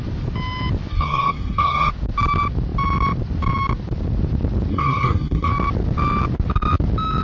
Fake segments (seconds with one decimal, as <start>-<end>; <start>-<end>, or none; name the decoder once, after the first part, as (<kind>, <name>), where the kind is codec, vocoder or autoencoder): 0.9-1.9 (codec, SNAC); 4.7-5.5